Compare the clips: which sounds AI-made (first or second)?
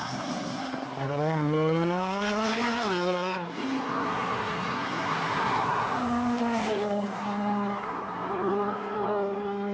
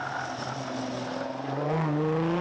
first